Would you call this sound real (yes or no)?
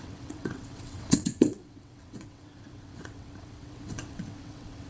no